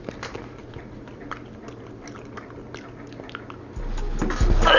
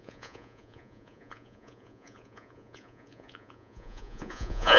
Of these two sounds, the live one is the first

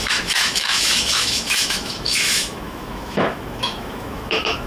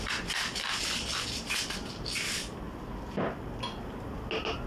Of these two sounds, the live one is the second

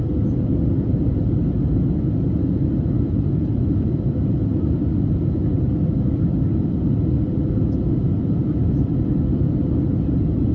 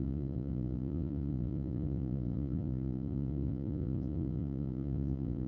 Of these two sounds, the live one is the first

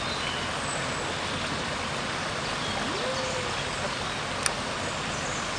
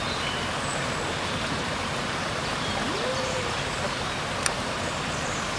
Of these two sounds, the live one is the first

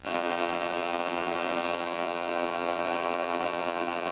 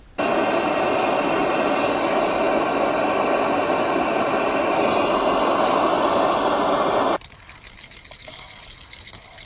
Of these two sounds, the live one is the second